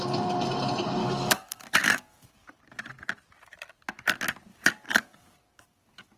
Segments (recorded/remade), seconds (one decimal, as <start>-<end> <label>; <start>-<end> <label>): 0.0-1.0 recorded; 1.0-2.6 remade; 2.6-4.5 recorded; 4.5-6.2 remade